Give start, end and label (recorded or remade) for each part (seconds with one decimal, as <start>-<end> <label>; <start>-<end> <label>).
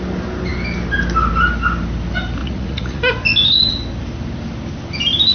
0.0-2.4 recorded; 2.4-3.0 remade; 3.0-5.3 recorded